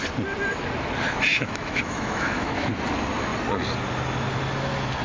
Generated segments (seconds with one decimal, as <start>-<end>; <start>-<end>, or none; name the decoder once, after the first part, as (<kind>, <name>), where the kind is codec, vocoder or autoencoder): 1.3-2.7 (autoencoder, DAC-VAE)